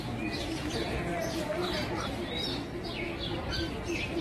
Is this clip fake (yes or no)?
no